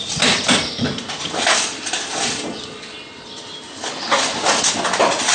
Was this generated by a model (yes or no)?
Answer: no